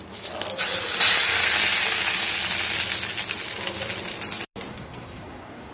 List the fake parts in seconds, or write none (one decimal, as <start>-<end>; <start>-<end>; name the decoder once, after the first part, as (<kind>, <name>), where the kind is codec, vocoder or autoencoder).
4.7-5.7 (codec, SNAC)